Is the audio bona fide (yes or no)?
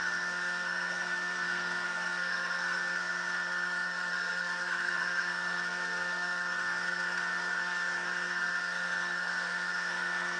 no